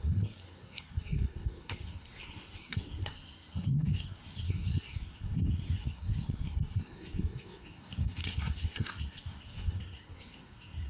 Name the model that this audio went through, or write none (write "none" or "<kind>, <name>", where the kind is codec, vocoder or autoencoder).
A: codec, SNAC